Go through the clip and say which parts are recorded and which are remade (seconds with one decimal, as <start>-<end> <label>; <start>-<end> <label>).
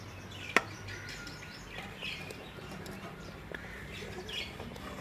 0.0-2.0 recorded; 2.0-5.0 remade